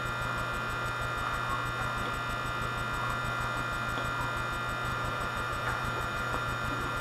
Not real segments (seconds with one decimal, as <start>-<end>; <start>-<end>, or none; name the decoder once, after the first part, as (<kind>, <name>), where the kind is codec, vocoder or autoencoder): 4.9-7.0 (vocoder, BigVGAN v2)